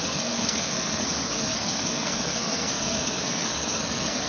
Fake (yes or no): yes